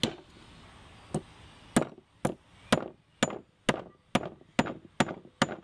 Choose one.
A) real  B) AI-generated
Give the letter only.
A